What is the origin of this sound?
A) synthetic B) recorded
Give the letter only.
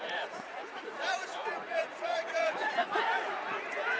A